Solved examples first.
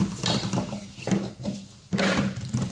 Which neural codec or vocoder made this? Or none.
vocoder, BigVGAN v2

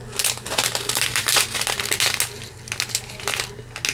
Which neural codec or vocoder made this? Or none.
none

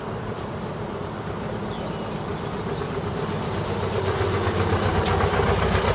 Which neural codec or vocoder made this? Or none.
vocoder, BigVGAN v2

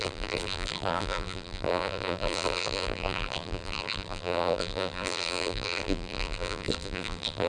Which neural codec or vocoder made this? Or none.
vocoder, BigVGAN v2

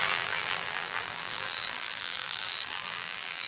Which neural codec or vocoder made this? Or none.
vocoder, BigVGAN v2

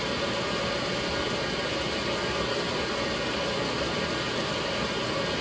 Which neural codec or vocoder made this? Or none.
none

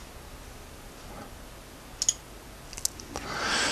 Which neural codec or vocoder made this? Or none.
none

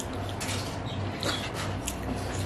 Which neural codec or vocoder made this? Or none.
none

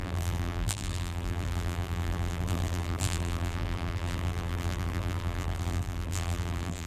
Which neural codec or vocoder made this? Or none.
vocoder, BigVGAN v2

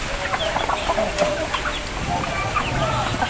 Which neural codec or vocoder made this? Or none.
none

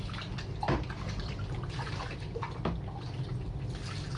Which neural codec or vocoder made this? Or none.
none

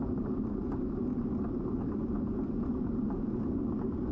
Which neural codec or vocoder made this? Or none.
vocoder, BigVGAN v2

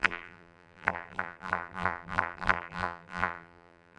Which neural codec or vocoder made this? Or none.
vocoder, BigVGAN v2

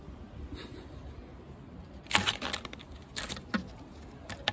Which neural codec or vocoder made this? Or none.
none